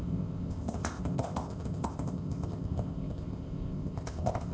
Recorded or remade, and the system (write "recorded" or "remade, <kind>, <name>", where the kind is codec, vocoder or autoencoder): remade, codec, ZipCodec